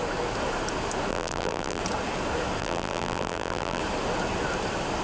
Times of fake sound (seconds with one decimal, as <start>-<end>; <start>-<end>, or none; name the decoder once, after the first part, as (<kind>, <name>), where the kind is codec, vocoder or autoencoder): 1.1-1.8 (vocoder, BigVGAN v2); 2.6-3.8